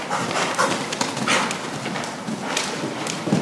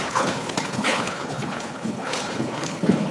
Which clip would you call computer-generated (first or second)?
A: second